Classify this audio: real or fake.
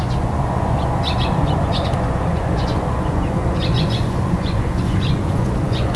fake